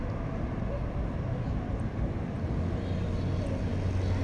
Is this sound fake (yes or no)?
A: no